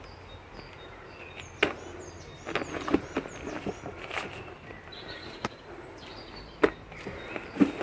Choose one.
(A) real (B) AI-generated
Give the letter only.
A